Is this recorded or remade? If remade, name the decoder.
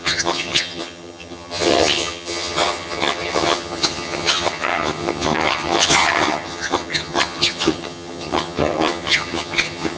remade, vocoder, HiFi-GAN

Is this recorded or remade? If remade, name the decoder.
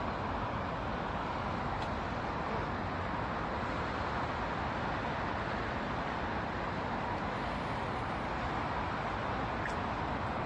recorded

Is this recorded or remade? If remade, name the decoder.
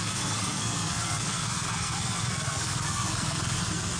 remade, codec, SNAC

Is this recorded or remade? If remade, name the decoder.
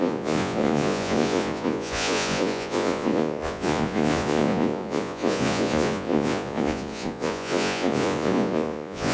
remade, vocoder, Vocos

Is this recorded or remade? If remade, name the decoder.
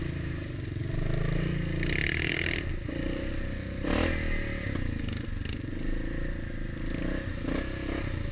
recorded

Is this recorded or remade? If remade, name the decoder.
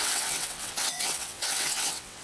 remade, vocoder, WaveNeXt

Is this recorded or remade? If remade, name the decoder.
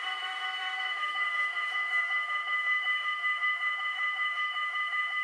remade, autoencoder, DAC-VAE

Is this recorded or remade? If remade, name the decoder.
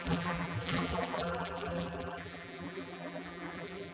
remade, vocoder, BigVGAN v2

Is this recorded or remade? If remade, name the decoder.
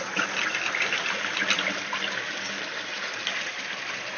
recorded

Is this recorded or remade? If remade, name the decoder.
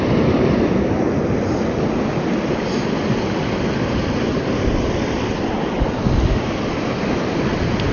recorded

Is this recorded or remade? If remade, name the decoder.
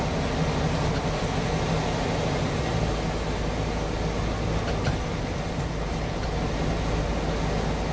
recorded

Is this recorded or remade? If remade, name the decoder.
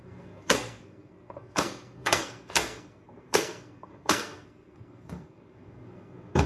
remade, codec, SNAC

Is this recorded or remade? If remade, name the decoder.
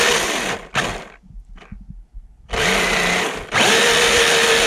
recorded